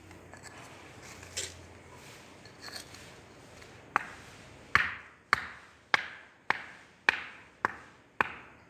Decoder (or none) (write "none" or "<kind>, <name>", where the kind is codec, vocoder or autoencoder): none